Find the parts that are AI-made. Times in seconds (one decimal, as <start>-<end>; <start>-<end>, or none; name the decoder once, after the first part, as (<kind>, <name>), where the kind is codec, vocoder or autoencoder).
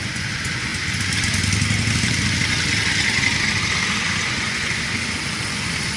0.0-0.7 (vocoder, Vocos); 4.0-6.0